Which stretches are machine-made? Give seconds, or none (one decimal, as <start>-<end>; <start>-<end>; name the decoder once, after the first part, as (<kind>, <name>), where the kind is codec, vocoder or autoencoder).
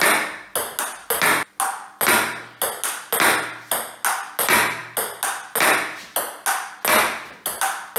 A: none